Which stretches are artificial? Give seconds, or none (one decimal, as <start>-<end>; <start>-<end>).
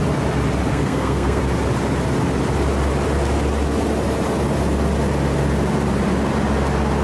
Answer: 0.7-1.4